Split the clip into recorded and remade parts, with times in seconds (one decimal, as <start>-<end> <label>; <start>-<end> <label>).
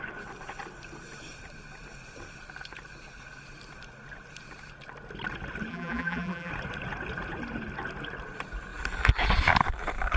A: 0.0-5.7 recorded; 5.7-6.5 remade; 6.5-10.2 recorded